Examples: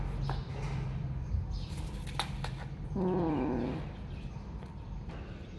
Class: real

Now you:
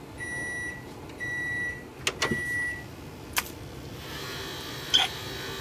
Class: real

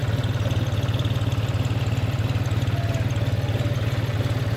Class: real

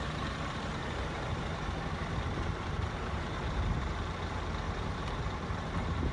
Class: fake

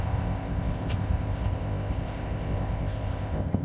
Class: fake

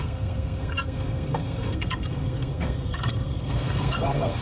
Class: fake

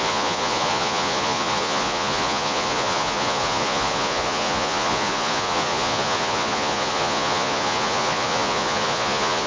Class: fake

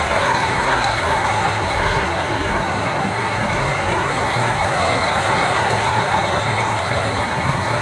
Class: fake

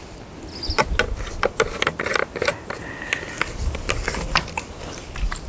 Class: real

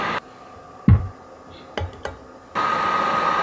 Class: real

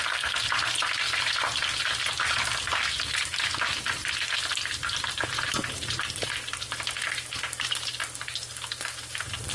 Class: real